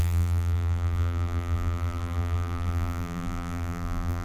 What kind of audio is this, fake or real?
fake